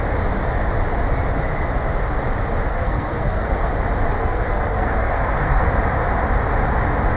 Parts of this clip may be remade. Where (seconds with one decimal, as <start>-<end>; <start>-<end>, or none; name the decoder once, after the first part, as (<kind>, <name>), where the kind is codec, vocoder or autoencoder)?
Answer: 2.7-3.7 (codec, SNAC); 4.2-5.7